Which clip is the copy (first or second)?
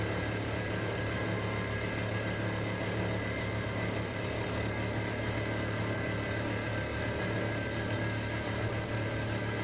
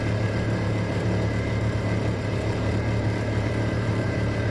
second